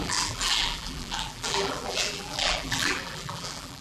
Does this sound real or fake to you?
fake